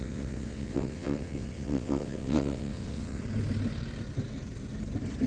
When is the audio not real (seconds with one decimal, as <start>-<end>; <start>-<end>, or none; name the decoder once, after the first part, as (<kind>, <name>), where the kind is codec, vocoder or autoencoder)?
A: 0.0-3.2 (vocoder, WaveNeXt)